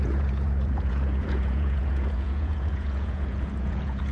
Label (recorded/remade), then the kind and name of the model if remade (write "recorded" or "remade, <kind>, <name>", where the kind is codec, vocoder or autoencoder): remade, vocoder, Vocos